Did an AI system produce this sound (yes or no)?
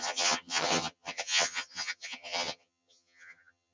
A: yes